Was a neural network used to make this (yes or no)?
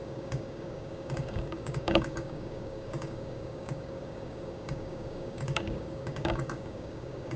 yes